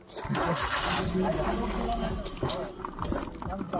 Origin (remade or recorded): recorded